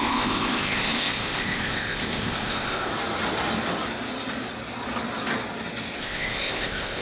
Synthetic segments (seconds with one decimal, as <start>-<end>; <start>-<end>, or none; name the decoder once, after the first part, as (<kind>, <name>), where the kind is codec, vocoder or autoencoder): 0.0-2.9 (codec, ZipCodec); 6.0-7.0

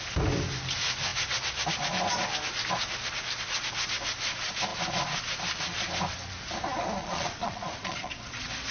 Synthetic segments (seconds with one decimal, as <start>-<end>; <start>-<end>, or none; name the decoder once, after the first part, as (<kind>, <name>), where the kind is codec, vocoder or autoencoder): 7.0-8.7 (vocoder, Vocos)

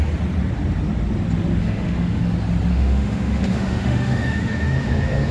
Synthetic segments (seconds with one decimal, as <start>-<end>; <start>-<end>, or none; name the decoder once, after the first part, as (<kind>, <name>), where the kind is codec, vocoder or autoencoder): 1.6-2.2 (autoencoder, DAC-VAE); 2.7-5.3

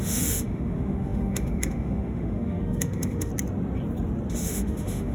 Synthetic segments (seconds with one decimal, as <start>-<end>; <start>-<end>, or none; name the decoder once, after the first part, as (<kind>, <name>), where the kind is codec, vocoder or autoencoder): 0.0-3.3 (autoencoder, DAC-VAE); 4.3-5.1

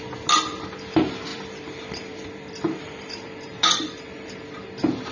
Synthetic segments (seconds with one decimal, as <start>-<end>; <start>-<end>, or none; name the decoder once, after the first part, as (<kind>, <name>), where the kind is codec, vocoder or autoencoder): 1.3-4.4 (vocoder, BigVGAN v2)

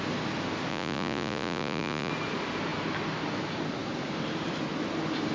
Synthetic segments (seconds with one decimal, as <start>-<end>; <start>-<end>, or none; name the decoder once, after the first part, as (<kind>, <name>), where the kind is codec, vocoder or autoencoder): 0.7-2.1 (vocoder, Vocos)